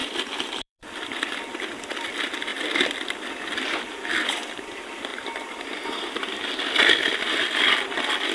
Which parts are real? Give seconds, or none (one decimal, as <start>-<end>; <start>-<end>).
0.8-5.1; 6.5-8.3